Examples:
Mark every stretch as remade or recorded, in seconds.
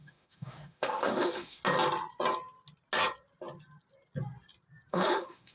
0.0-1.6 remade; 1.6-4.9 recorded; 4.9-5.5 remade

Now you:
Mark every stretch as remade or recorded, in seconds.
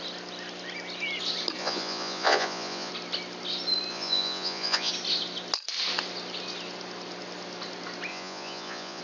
0.0-1.6 recorded; 1.6-2.9 remade; 2.9-3.9 recorded; 3.9-4.9 remade; 4.9-8.1 recorded; 8.1-9.0 remade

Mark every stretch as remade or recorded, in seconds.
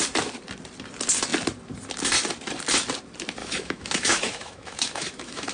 0.0-3.4 recorded; 3.4-5.5 remade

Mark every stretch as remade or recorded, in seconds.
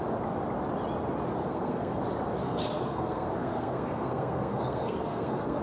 0.0-1.4 recorded; 1.4-2.0 remade; 2.0-2.4 recorded; 2.4-5.6 remade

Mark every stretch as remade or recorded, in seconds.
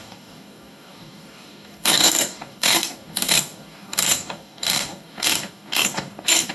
0.0-6.5 remade